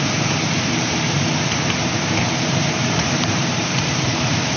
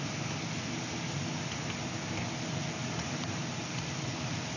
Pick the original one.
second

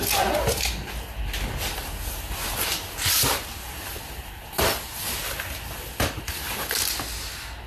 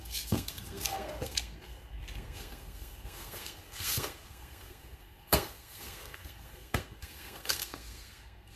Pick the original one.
first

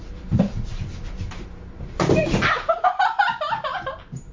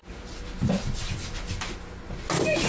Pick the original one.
second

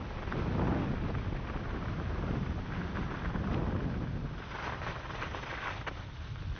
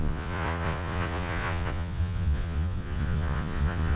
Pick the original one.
first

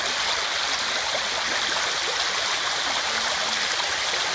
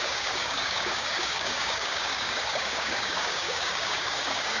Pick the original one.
first